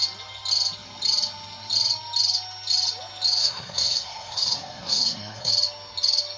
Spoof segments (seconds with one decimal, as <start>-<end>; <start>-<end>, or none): 3.4-5.5